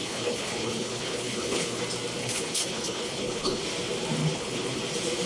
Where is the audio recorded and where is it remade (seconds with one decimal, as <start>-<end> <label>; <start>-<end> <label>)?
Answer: 0.0-1.8 remade; 1.8-2.2 recorded; 2.2-3.6 remade; 3.6-4.2 recorded; 4.2-4.8 remade; 4.8-5.3 recorded